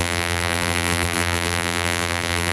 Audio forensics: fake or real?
fake